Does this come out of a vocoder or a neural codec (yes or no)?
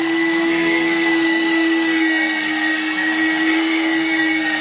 yes